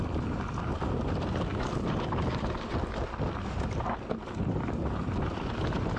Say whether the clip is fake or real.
real